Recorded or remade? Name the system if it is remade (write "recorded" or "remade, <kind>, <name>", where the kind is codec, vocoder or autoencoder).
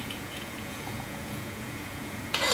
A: remade, vocoder, Vocos